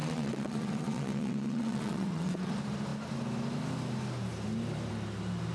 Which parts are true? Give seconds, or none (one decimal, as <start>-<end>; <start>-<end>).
2.5-5.5